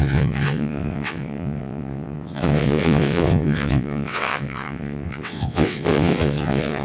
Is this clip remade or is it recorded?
remade